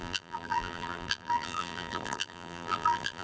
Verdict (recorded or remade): remade